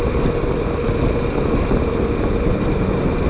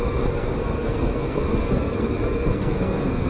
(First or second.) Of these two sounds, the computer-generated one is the second